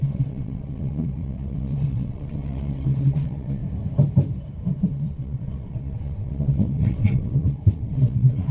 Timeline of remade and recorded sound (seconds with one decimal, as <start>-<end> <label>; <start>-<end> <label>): 0.0-3.6 remade; 3.6-4.8 recorded; 4.8-8.5 remade